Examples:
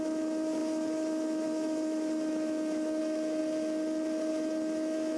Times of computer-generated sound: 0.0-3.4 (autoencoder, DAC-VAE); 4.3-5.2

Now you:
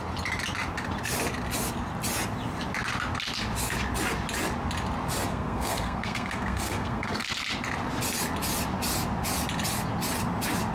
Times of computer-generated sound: 5.3-7.3 (codec, SNAC)

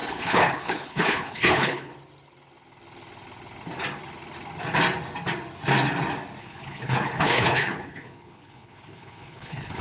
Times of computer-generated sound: 0.0-1.9 (codec, HILCodec); 6.4-9.8

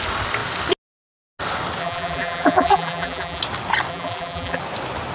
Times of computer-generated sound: 1.8-3.4 (vocoder, BigVGAN v2); 3.9-4.6

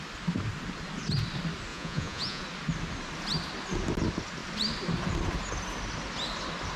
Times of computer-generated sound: 1.7-2.4 (vocoder, Vocos)

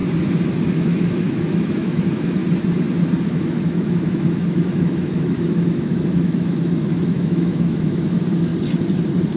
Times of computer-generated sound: 0.7-2.4 (autoencoder, DAC-VAE); 3.2-8.5

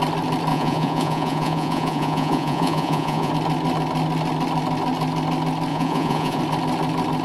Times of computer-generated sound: 0.5-3.3 (vocoder, Vocos); 5.7-6.4